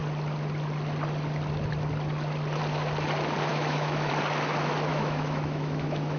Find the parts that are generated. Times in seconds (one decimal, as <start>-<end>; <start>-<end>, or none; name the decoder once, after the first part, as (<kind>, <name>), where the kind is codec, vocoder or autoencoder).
3.5-4.1 (autoencoder, DAC-VAE); 4.9-6.2